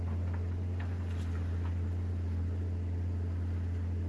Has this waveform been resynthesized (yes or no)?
no